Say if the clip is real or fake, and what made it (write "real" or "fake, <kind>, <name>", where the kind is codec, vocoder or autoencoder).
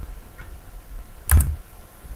real